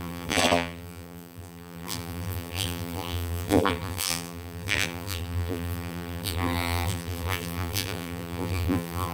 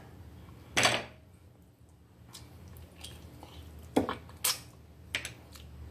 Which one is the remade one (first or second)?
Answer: first